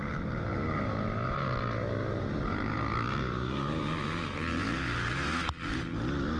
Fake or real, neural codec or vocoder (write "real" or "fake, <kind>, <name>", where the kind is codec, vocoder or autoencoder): real